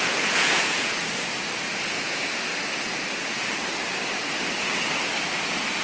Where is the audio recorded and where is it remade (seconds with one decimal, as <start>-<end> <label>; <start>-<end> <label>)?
0.0-1.0 remade; 1.0-1.8 recorded; 1.8-2.5 remade; 2.5-5.8 recorded